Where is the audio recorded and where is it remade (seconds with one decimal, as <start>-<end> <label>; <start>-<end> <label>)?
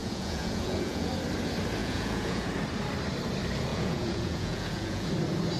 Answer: 0.0-1.1 remade; 1.1-1.8 recorded; 1.8-2.5 remade; 2.5-3.7 recorded; 3.7-5.1 remade; 5.1-5.6 recorded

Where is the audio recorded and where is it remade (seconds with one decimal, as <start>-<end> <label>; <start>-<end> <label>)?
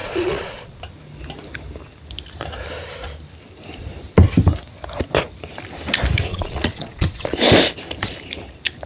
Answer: 0.0-0.8 remade; 0.8-6.3 recorded; 6.3-7.4 remade; 7.4-8.9 recorded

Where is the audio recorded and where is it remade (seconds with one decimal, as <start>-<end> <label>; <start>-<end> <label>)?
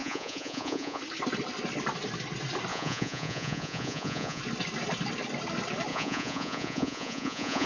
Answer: 0.0-1.0 remade; 1.0-2.7 recorded; 2.7-4.4 remade; 4.4-5.9 recorded; 5.9-7.7 remade